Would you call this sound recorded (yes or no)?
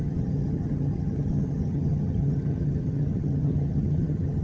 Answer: no